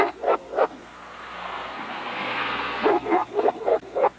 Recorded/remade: remade